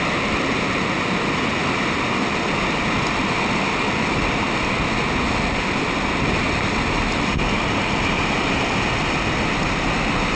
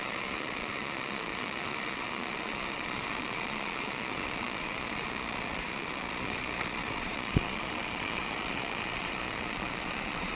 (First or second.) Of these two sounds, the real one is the first